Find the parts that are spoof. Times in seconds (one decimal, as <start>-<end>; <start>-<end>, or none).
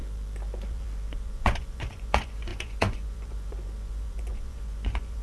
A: 1.2-5.2